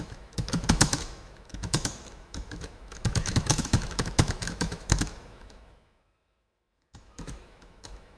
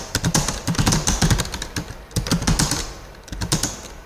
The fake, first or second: first